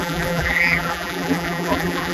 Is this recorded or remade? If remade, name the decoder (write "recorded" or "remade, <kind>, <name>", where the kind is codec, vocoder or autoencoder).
remade, vocoder, BigVGAN v2